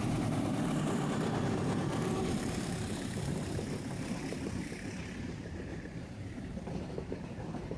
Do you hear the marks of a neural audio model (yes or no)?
yes